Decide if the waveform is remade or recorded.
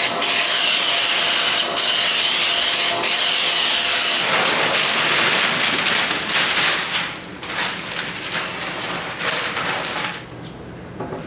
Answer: recorded